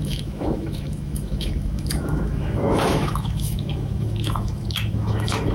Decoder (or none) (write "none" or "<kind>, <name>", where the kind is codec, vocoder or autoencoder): autoencoder, DAC-VAE